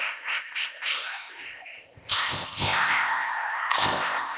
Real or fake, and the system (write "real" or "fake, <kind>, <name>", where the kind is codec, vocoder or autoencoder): fake, codec, ZipCodec